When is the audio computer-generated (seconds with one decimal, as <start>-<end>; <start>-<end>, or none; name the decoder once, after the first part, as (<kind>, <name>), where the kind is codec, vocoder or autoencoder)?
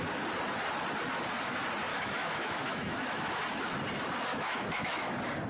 1.9-3.3 (autoencoder, DAC-VAE); 4.3-5.1